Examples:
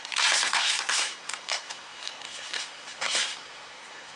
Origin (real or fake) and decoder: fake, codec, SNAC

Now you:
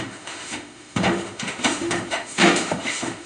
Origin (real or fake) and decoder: fake, autoencoder, DAC-VAE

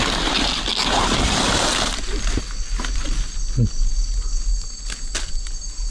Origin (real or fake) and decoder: real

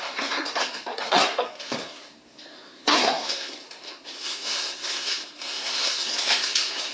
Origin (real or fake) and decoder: fake, codec, SNAC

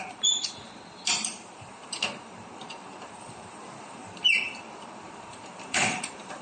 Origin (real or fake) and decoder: fake, vocoder, BigVGAN v2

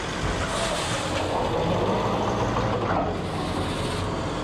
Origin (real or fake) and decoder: real